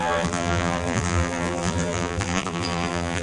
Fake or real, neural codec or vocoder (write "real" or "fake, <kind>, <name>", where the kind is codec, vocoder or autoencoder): fake, vocoder, BigVGAN v2